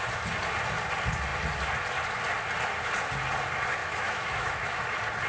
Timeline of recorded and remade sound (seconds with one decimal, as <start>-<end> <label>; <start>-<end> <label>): 0.0-3.8 recorded; 3.8-4.8 remade; 4.8-5.3 recorded